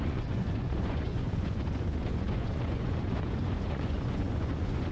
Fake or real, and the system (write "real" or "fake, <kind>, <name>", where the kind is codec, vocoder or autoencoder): fake, vocoder, Vocos